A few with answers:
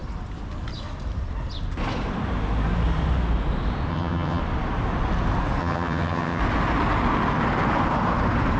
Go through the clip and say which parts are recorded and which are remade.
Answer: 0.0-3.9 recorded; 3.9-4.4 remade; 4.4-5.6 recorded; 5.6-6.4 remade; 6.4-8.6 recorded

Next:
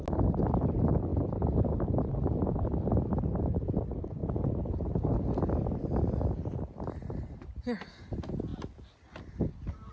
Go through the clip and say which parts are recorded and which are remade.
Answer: 0.0-9.9 recorded

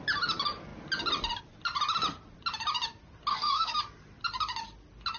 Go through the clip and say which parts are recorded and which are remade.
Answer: 0.0-3.3 recorded; 3.3-3.8 remade; 3.8-5.2 recorded

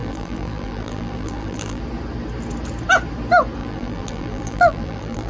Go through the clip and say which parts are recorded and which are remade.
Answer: 0.0-1.8 remade; 1.8-3.6 recorded; 3.6-5.3 remade

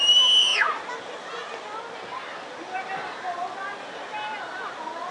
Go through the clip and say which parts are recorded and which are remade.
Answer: 0.0-5.1 recorded

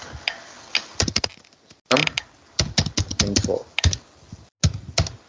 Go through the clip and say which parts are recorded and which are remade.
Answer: 0.0-5.3 recorded

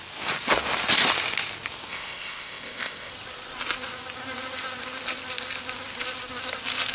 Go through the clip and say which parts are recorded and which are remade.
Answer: 0.0-1.9 recorded; 1.9-3.1 remade; 3.1-6.9 recorded